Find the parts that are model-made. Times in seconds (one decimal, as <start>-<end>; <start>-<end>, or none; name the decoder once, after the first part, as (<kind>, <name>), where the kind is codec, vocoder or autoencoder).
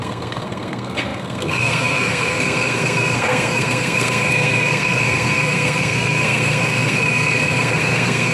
0.0-8.3 (codec, SNAC)